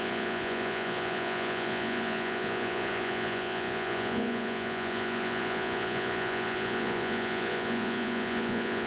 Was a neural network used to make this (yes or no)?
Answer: yes